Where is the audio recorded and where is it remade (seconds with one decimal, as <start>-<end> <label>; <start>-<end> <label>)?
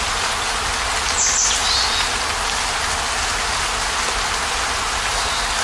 0.0-5.6 recorded